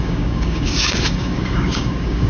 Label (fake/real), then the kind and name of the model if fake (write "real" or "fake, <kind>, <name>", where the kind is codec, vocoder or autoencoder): fake, codec, DAC